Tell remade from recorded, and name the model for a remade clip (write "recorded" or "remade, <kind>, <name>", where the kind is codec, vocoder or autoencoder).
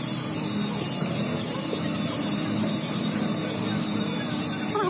recorded